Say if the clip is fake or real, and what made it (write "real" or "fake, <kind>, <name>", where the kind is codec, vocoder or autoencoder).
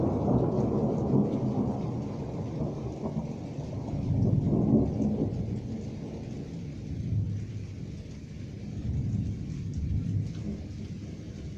real